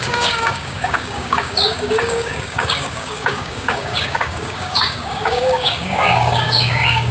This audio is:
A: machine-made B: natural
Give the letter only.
A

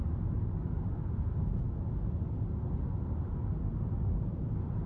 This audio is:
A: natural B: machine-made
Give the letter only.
A